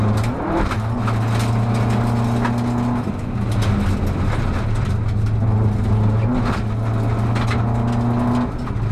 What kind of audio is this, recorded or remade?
recorded